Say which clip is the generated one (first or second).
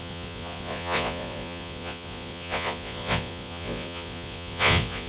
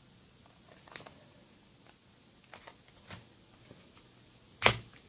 first